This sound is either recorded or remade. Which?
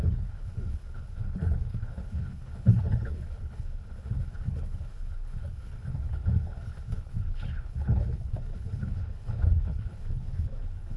remade